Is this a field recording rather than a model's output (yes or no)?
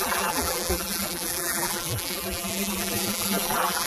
no